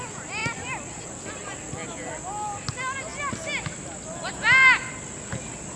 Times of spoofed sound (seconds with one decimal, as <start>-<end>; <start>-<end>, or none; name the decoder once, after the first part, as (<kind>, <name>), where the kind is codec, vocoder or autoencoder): none